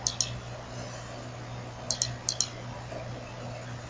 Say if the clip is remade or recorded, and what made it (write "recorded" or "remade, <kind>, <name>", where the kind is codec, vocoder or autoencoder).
recorded